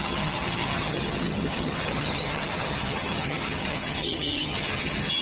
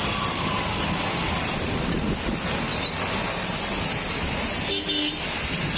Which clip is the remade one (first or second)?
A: first